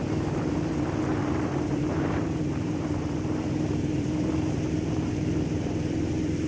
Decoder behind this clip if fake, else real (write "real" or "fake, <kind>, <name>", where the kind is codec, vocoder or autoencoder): fake, vocoder, BigVGAN v2